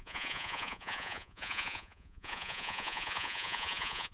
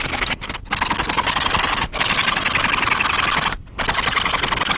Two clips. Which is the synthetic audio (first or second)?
first